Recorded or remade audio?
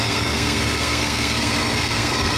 remade